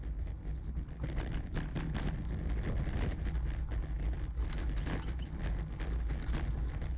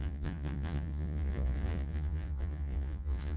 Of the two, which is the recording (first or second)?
first